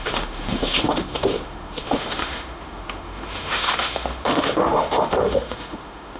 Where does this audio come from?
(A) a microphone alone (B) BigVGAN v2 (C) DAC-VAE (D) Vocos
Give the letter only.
C